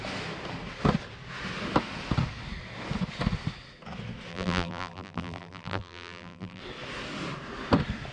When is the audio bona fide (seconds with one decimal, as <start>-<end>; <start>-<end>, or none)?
0.0-4.3; 6.6-8.1